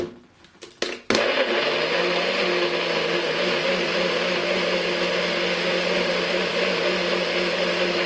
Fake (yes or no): no